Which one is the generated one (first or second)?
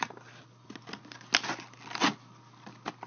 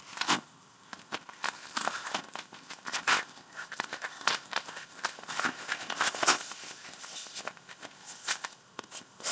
second